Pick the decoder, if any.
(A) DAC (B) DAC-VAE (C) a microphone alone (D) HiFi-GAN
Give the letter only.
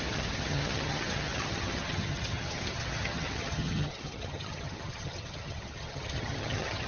D